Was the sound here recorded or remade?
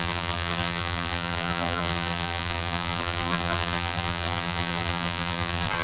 remade